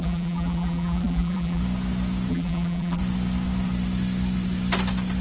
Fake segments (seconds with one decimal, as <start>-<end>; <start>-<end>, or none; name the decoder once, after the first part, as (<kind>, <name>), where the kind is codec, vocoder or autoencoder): 0.0-1.6 (vocoder, BigVGAN v2); 2.3-3.0